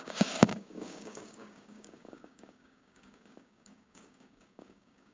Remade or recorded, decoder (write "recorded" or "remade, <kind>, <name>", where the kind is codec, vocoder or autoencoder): remade, codec, DAC